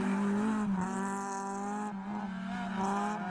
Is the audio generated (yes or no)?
no